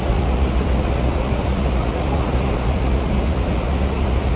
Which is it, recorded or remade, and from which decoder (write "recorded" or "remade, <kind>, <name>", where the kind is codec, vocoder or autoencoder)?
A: remade, vocoder, Vocos